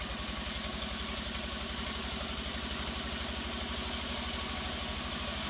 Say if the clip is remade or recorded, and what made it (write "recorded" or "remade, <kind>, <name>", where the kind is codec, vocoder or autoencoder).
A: recorded